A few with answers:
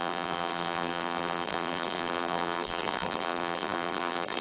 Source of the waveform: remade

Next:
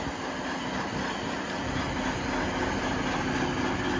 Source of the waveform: recorded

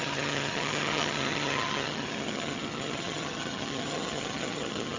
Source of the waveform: remade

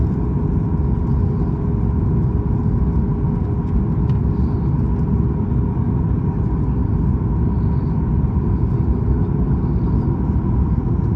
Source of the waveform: recorded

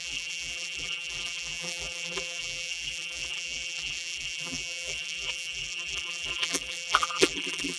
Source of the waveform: remade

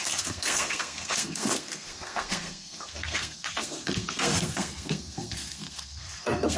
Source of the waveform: remade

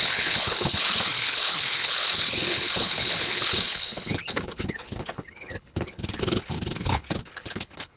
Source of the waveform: remade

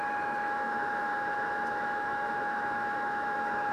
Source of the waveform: remade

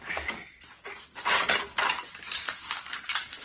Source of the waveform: recorded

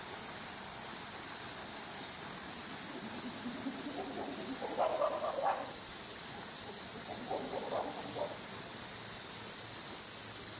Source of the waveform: recorded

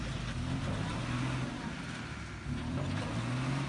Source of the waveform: recorded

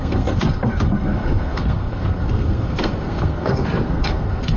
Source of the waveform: remade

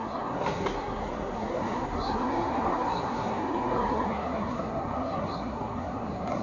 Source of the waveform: remade